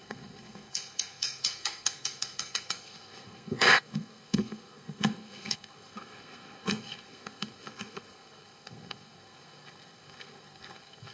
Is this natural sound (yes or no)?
no